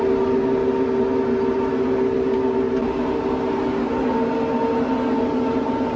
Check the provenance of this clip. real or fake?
real